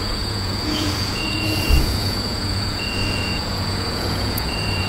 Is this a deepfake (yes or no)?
yes